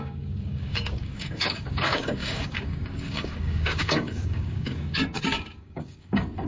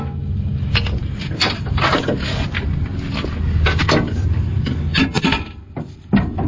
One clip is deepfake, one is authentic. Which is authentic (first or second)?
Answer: second